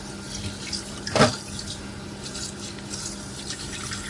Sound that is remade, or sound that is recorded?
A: recorded